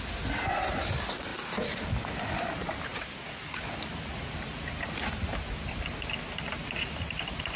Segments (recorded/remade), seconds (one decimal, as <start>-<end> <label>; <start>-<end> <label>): 0.0-7.6 recorded